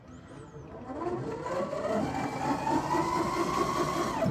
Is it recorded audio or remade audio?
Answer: recorded